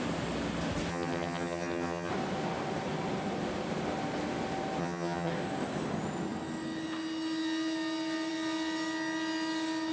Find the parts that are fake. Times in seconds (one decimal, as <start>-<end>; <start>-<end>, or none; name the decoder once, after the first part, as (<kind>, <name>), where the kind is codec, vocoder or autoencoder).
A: 0.9-2.1 (vocoder, HiFi-GAN); 4.8-5.3